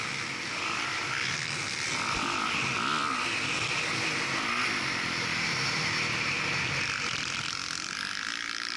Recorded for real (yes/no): yes